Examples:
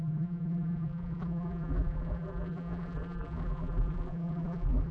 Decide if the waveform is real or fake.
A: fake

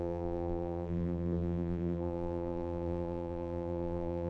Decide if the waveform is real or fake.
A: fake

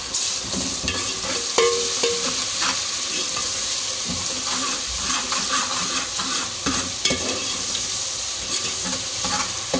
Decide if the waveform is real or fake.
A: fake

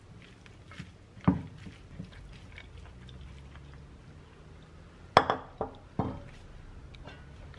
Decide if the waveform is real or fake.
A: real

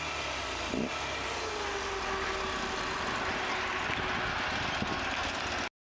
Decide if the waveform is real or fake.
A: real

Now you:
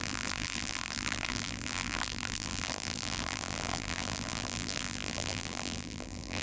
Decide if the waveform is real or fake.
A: fake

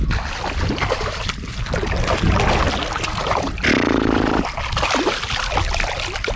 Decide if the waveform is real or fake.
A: real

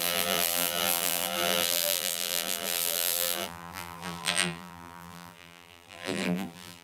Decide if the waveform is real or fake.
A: fake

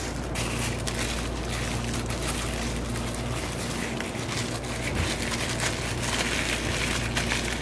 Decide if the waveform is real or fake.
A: real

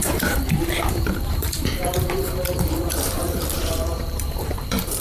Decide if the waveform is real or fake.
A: fake